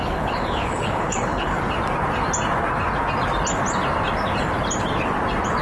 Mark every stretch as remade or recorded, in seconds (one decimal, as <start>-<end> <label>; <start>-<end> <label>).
0.0-1.6 remade; 1.6-5.6 recorded